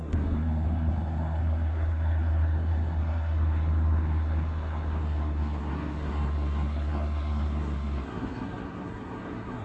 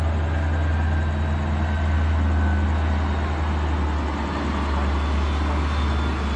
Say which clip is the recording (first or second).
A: second